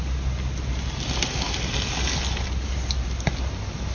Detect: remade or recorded recorded